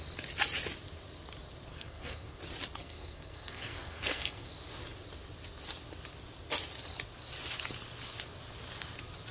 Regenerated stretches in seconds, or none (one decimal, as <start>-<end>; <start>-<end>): 1.7-2.4; 2.8-4.5